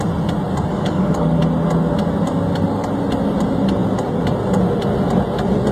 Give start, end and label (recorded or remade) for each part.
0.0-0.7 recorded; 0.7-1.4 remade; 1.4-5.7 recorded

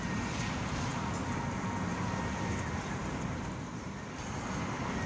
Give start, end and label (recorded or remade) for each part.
0.0-0.9 recorded; 0.9-1.5 remade; 1.5-1.9 recorded; 1.9-5.1 remade

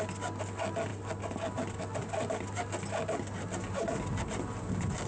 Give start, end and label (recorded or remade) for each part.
0.0-5.1 recorded

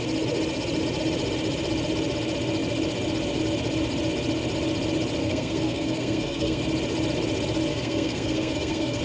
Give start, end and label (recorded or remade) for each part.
0.0-5.2 recorded; 5.2-6.6 remade; 6.6-7.7 recorded; 7.7-9.0 remade

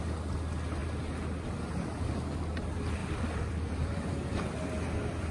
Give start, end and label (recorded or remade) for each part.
0.0-3.0 recorded; 3.0-4.1 remade; 4.1-5.3 recorded